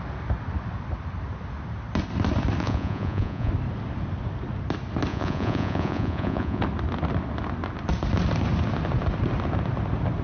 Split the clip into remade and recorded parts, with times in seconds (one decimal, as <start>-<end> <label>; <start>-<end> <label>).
0.0-2.6 recorded; 2.6-3.5 remade; 3.5-5.1 recorded; 5.1-6.6 remade; 6.6-10.2 recorded